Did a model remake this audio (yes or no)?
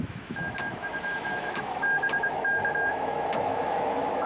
yes